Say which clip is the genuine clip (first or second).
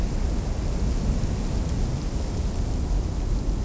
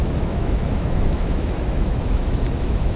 first